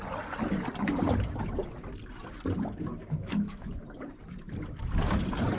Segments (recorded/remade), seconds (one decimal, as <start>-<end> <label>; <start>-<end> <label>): 0.0-3.2 recorded; 3.2-3.7 remade; 3.7-5.6 recorded